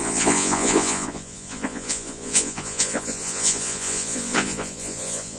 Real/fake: fake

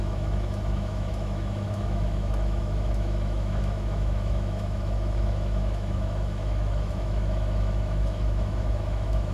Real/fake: fake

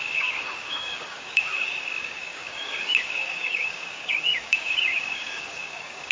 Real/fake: fake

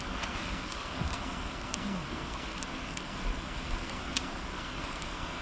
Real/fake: fake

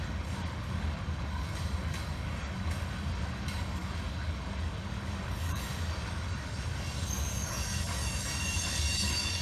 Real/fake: fake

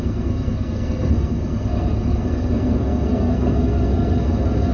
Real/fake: fake